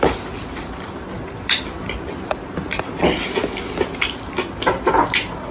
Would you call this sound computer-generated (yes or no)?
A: no